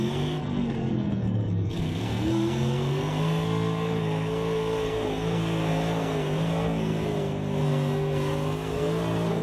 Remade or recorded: remade